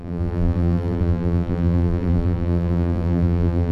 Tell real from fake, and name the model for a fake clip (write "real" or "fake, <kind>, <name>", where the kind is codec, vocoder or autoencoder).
fake, vocoder, BigVGAN v2